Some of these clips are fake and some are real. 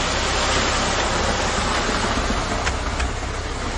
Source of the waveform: real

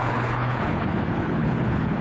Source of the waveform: fake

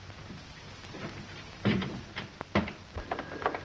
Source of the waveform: real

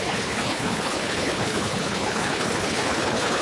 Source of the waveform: fake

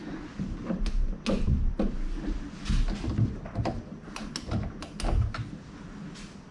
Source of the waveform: real